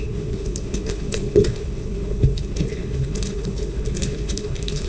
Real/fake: fake